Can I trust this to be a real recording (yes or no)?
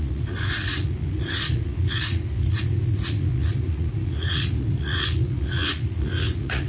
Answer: no